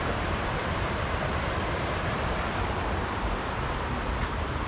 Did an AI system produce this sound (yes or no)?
yes